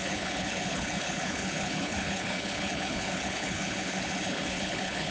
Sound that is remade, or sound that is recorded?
remade